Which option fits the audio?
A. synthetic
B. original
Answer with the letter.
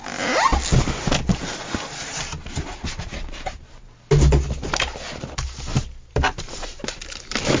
B